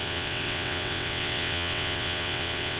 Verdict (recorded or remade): remade